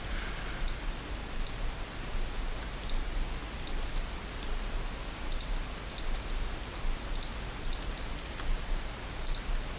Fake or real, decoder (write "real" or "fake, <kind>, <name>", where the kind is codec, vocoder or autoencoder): real